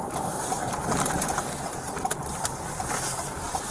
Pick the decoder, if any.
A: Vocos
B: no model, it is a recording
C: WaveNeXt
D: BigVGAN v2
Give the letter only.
D